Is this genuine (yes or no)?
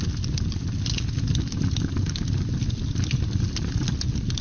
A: yes